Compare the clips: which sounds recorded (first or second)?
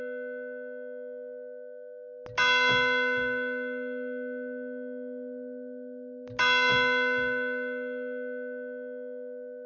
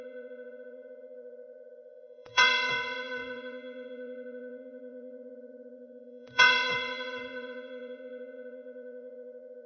first